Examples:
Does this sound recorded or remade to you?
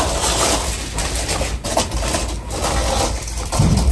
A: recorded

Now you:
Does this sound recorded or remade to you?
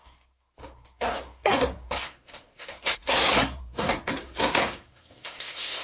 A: remade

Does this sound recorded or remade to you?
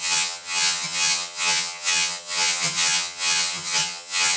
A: remade